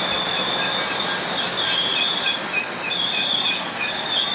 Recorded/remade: recorded